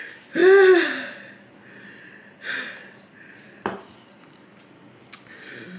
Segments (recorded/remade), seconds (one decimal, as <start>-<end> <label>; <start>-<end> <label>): 0.0-5.8 recorded